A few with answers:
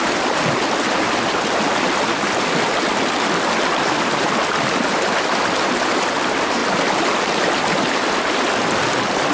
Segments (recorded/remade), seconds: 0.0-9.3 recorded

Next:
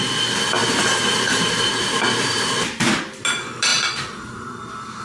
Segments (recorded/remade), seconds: 0.0-0.6 recorded; 0.6-3.0 remade; 3.0-3.7 recorded; 3.7-5.0 remade

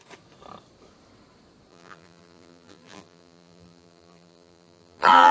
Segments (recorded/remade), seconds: 0.0-1.7 recorded; 1.7-5.3 remade

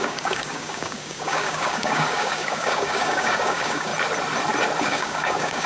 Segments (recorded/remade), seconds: 0.0-3.9 remade; 3.9-4.8 recorded; 4.8-5.7 remade